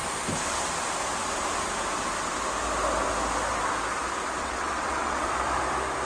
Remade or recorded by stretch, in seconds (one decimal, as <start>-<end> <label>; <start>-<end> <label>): 0.0-4.4 recorded; 4.4-5.3 remade; 5.3-6.0 recorded